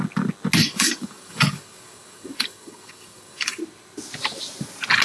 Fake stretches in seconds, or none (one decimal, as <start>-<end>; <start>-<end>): 0.6-3.6